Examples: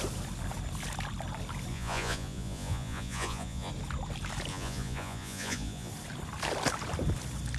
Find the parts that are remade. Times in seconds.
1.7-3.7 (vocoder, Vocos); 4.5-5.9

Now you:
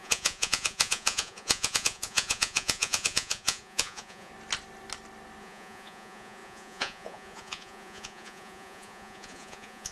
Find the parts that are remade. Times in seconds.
0.0-4.3 (vocoder, Vocos); 5.4-9.9

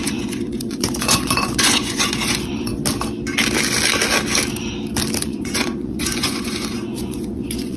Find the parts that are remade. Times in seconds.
0.0-2.7 (vocoder, Vocos); 5.2-7.8

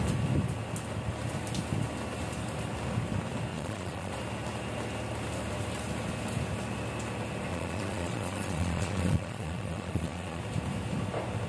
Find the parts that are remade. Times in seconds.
3.5-4.1 (vocoder, Vocos); 7.5-10.4